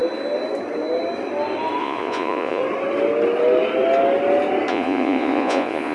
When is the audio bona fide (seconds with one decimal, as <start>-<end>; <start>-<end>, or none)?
0.0-1.8; 2.6-4.7